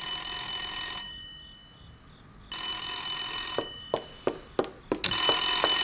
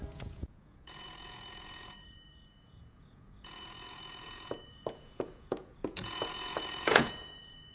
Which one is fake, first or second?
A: second